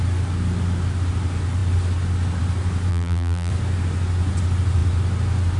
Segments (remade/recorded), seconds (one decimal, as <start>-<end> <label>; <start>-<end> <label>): 0.0-2.9 recorded; 2.9-3.5 remade; 3.5-5.6 recorded